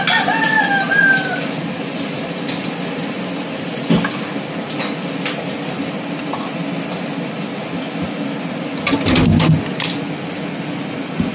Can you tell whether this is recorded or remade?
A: recorded